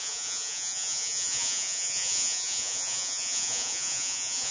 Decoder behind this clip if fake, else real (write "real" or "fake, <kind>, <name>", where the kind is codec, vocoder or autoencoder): fake, vocoder, Vocos